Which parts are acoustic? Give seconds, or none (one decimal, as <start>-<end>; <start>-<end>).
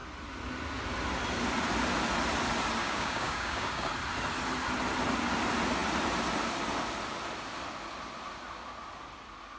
0.0-2.8; 3.9-9.6